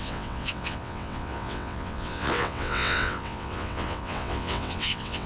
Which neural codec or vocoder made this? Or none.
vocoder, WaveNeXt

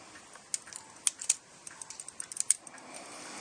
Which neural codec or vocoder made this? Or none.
none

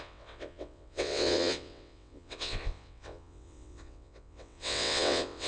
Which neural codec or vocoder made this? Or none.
vocoder, WaveNeXt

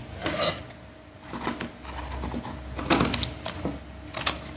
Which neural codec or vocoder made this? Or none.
none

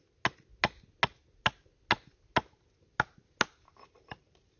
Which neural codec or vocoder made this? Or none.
none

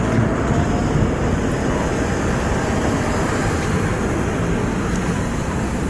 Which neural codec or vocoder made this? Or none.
none